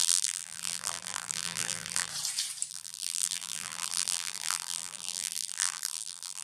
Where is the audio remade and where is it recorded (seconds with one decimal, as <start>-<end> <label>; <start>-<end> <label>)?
0.0-2.1 remade; 2.1-2.7 recorded; 2.7-6.4 remade